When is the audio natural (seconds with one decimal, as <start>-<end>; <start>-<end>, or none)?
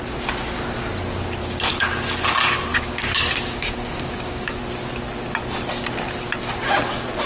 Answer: 0.0-2.7; 4.6-7.3